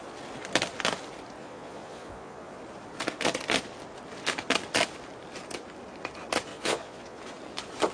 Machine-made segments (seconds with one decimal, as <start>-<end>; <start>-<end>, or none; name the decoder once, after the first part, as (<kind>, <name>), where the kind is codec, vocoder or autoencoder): 1.4-2.6 (vocoder, Vocos); 6.5-7.2